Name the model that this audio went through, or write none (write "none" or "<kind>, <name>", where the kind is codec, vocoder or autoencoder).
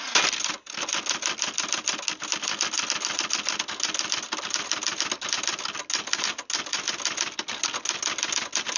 none